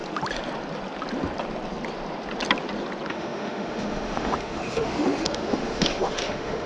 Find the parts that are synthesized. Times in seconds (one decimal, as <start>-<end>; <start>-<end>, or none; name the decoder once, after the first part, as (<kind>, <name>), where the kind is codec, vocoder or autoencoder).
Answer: 3.1-6.7 (autoencoder, DAC-VAE)